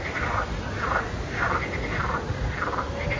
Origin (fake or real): real